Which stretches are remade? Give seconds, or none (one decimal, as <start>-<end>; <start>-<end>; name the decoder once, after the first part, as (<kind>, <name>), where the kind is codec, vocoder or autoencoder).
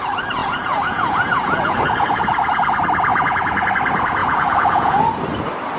0.4-2.2 (vocoder, Vocos); 3.1-3.7; 4.2-5.0